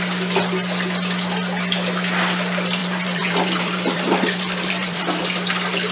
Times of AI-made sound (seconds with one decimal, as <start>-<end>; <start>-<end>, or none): 2.8-5.2